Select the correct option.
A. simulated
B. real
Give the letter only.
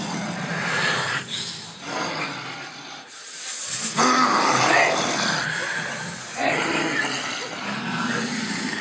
B